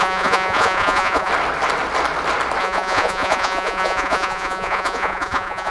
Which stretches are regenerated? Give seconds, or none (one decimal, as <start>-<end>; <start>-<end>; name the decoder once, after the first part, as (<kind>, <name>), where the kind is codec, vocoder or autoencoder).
0.0-1.3 (vocoder, Vocos); 2.6-5.7